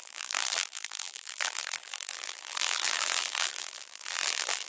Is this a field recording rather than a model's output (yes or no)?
no